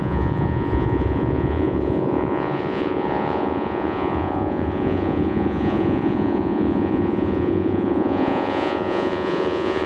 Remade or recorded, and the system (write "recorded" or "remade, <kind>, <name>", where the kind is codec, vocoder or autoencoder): remade, vocoder, Vocos